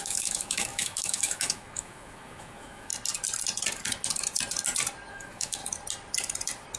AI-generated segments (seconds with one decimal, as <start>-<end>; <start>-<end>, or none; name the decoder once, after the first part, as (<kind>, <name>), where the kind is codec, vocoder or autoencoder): 0.0-2.9 (autoencoder, DAC-VAE); 5.1-5.6